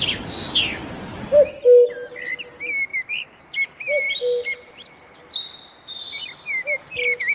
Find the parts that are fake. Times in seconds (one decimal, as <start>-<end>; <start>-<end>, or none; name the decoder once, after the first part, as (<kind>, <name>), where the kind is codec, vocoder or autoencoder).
2.9-3.5 (vocoder, BigVGAN v2)